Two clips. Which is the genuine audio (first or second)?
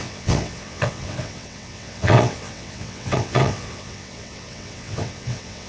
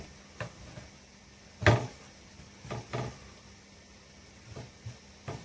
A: second